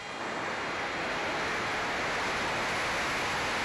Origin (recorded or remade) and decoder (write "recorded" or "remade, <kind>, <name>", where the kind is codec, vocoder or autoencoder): recorded